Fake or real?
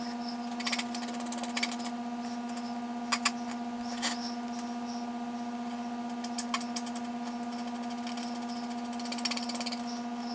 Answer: real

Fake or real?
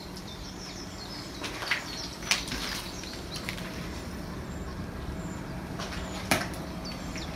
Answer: fake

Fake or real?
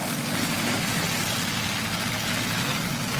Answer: real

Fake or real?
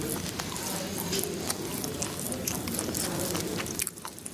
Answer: real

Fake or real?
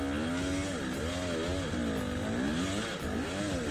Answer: real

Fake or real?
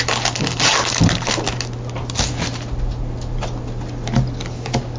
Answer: real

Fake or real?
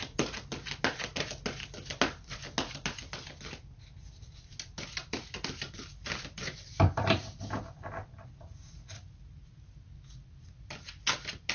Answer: real